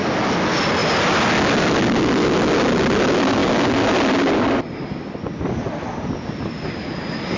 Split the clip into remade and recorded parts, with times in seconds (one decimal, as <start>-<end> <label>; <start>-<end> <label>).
0.0-7.4 recorded